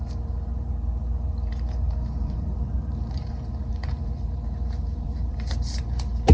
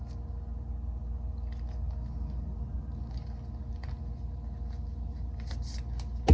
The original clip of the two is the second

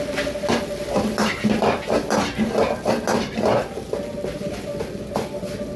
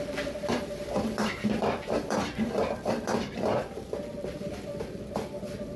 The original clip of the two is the first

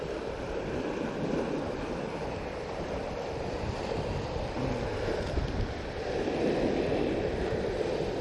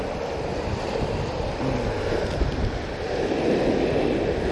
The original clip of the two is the second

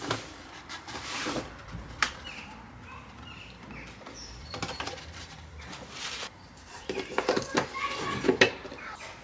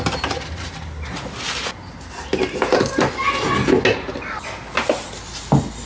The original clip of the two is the second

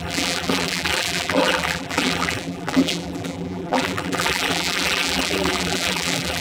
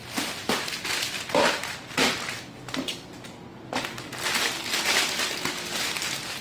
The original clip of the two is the second